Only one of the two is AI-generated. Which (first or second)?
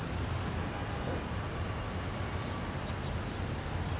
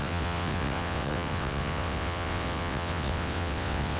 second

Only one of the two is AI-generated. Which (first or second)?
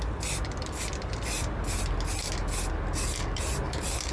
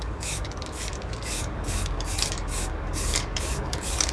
second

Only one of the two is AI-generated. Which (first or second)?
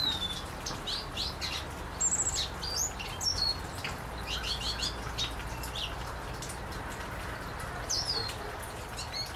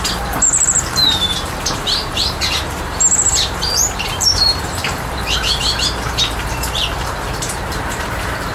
second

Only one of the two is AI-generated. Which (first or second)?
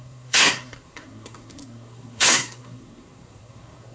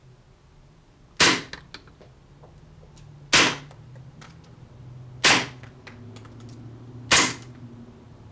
first